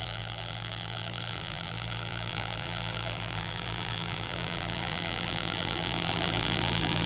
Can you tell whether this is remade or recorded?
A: remade